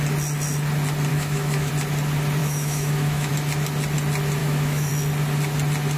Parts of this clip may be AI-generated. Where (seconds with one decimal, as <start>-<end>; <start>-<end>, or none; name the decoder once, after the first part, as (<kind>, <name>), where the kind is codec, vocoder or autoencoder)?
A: 1.1-1.7 (autoencoder, DAC-VAE); 2.4-3.3; 4.4-4.9